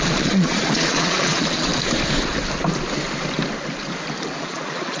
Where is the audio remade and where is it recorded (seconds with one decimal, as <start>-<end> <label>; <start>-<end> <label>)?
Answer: 0.0-1.7 remade; 1.7-4.4 recorded; 4.4-5.0 remade